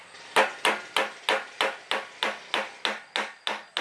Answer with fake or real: real